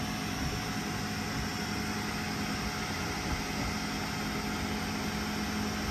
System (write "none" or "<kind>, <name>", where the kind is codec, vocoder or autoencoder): none